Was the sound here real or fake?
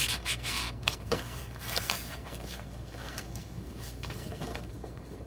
fake